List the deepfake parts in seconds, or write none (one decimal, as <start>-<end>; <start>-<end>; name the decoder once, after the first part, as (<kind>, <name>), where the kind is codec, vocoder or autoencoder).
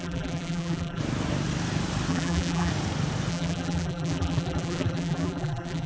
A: 0.0-1.0 (vocoder, BigVGAN v2); 2.1-2.7; 3.3-5.9